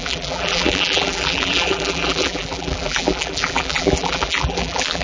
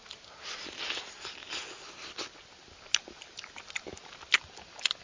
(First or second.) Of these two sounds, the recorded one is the second